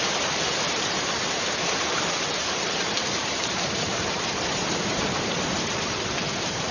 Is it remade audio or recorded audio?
remade